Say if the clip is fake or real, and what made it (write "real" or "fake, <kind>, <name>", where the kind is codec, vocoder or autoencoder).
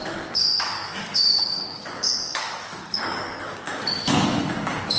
fake, codec, DAC